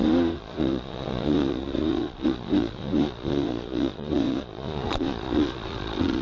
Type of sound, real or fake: fake